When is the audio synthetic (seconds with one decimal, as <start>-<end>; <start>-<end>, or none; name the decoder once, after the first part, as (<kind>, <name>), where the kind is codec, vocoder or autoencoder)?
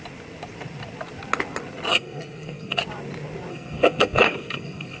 1.9-2.8 (codec, SNAC); 3.5-5.0